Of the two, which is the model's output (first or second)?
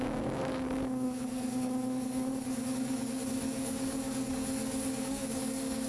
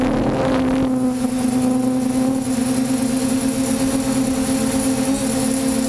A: first